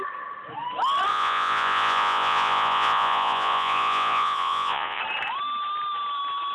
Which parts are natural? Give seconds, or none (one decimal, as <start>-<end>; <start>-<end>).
0.0-1.1; 5.0-6.5